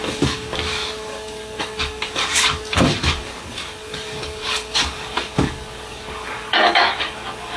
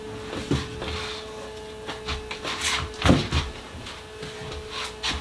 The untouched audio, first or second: second